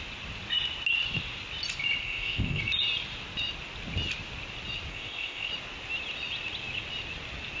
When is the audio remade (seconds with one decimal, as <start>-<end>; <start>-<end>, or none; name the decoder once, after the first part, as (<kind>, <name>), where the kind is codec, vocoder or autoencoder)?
2.0-2.6 (codec, ZipCodec); 4.9-5.5